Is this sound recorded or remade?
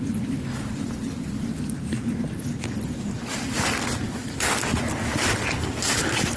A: recorded